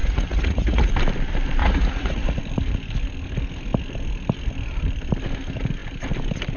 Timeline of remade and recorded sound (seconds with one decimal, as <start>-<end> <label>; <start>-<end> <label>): 0.0-0.9 remade; 0.9-1.6 recorded; 1.6-2.4 remade; 2.4-6.6 recorded